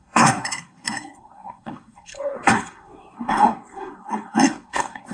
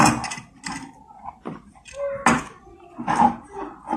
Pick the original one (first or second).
second